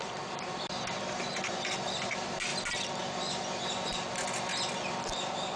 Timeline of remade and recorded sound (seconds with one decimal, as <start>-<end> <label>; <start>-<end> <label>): 0.0-5.6 recorded